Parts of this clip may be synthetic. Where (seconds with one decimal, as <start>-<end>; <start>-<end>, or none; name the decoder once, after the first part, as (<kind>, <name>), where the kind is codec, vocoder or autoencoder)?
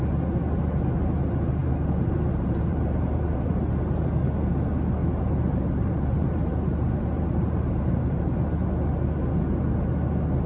1.6-3.5 (vocoder, BigVGAN v2); 5.0-8.2